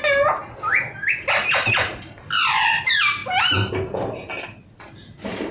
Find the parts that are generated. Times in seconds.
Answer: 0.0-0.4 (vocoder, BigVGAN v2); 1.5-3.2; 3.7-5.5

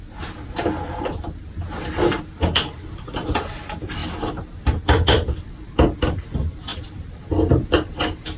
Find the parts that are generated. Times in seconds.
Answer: none

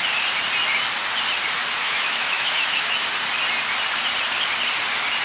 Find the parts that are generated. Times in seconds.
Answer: 1.8-2.9 (autoencoder, DAC-VAE)

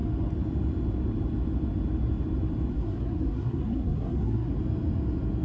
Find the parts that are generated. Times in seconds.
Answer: 2.7-4.5 (codec, SNAC)